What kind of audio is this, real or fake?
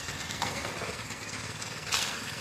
fake